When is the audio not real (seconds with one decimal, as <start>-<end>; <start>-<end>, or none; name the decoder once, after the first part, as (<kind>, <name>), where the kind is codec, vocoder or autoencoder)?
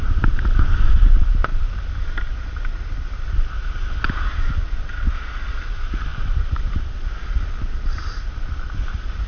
6.1-7.1 (vocoder, BigVGAN v2)